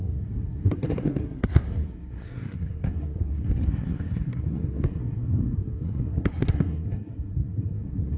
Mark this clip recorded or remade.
remade